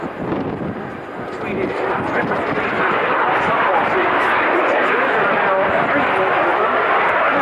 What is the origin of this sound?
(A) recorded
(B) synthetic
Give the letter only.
A